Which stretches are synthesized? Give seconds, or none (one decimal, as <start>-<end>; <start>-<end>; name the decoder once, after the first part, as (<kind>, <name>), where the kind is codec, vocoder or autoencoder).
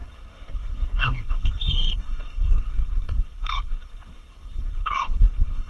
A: 0.0-5.7 (codec, SNAC)